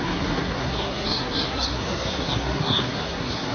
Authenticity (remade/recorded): remade